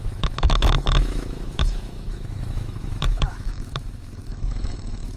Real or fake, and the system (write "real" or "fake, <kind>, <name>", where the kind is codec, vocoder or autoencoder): fake, autoencoder, DAC-VAE